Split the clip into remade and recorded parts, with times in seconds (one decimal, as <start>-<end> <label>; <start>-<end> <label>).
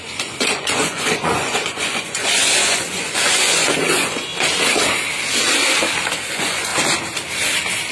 0.0-4.3 remade; 4.3-6.3 recorded; 6.3-6.7 remade; 6.7-7.9 recorded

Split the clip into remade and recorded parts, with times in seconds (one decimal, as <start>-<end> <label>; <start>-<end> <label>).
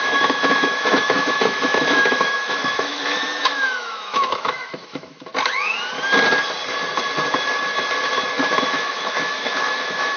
0.0-5.3 remade; 5.3-8.5 recorded; 8.5-10.2 remade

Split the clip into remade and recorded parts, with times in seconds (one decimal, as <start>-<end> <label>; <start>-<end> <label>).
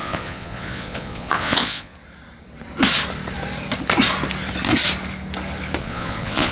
0.0-1.9 remade; 1.9-5.8 recorded; 5.8-6.5 remade